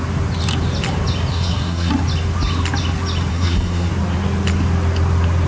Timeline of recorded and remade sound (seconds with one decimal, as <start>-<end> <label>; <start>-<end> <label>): 0.0-1.3 recorded; 1.3-1.9 remade; 1.9-3.3 recorded; 3.3-3.9 remade; 3.9-5.5 recorded